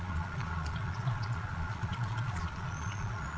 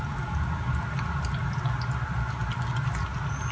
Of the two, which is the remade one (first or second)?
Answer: first